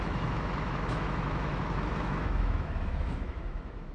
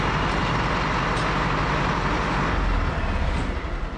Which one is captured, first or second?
second